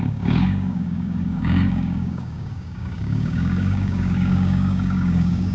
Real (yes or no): no